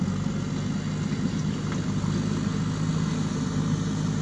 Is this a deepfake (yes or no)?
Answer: no